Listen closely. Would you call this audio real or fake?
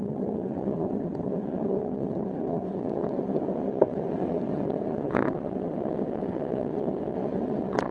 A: fake